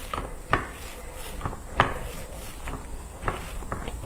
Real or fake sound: real